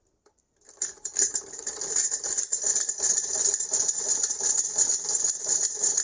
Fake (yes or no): no